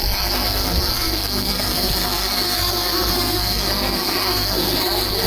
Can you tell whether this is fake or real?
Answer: fake